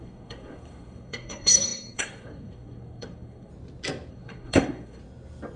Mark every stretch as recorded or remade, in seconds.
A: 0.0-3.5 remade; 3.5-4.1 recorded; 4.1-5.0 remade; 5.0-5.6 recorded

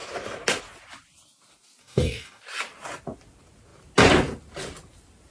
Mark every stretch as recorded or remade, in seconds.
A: 0.0-1.8 recorded; 1.8-2.4 remade; 2.4-5.3 recorded